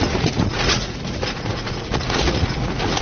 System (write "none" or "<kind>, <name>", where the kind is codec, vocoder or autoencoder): vocoder, Vocos